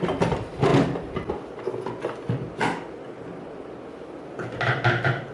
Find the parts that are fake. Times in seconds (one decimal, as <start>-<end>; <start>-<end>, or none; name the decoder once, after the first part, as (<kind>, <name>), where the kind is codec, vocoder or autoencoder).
none